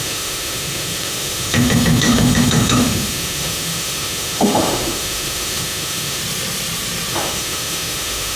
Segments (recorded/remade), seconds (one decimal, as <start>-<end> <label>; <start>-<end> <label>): 0.0-6.2 remade; 6.2-7.1 recorded; 7.1-8.4 remade